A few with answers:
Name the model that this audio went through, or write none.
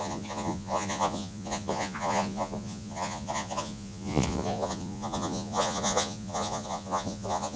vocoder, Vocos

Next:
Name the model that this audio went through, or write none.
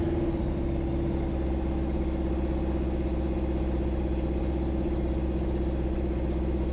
none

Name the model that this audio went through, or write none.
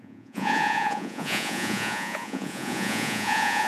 vocoder, Vocos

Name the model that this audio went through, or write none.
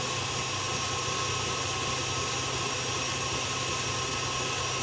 none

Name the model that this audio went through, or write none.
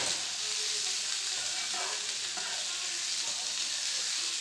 none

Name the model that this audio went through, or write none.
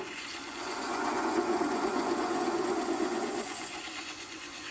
vocoder, Vocos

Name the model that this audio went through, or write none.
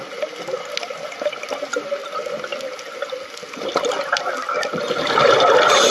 none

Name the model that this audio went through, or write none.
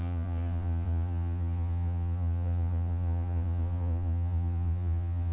vocoder, Vocos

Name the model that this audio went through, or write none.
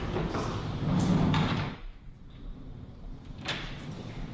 none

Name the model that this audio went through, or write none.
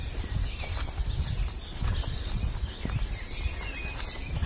none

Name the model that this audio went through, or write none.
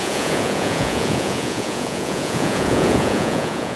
vocoder, Vocos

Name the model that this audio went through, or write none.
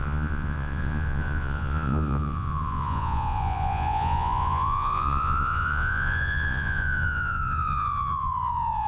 vocoder, Vocos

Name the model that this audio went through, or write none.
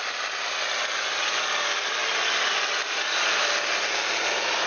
none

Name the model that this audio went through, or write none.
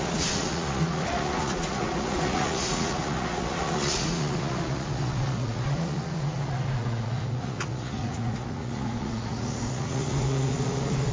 vocoder, Vocos